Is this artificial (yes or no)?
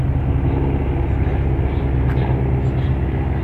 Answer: no